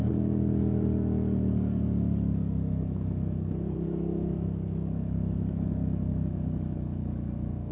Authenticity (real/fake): fake